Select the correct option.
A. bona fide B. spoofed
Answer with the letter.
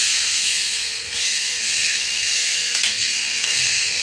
B